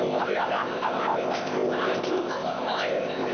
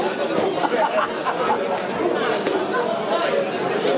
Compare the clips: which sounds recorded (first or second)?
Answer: second